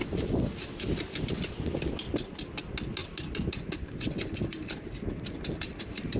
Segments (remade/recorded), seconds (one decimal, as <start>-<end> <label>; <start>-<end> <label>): 0.0-6.2 recorded